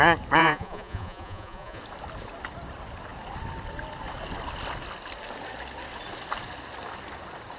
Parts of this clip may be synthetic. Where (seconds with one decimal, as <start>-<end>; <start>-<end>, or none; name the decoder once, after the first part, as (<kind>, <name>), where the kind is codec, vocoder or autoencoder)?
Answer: 0.4-1.8 (vocoder, Vocos)